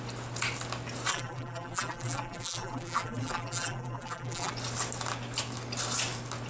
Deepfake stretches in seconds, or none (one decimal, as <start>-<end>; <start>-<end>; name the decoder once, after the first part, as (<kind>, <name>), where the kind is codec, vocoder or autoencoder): 1.1-4.5 (vocoder, BigVGAN v2)